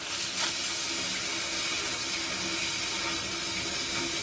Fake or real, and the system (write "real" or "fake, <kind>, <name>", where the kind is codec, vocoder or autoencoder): real